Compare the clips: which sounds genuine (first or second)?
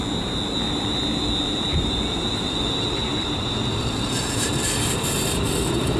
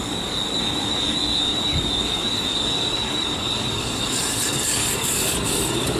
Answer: first